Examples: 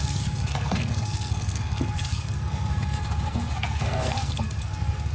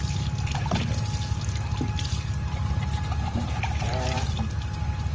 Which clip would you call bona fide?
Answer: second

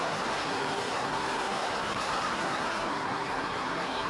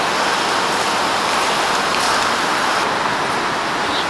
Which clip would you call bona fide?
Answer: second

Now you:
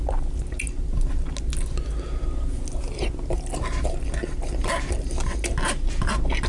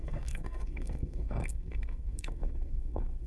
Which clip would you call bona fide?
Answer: first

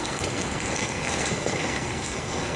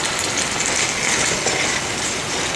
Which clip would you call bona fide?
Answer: second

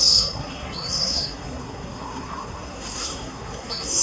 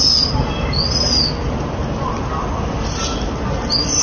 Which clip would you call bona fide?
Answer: second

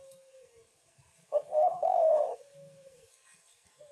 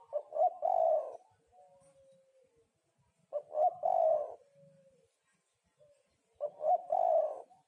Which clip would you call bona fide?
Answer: second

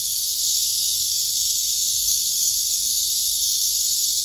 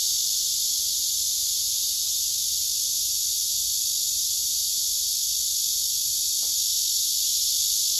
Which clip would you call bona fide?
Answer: second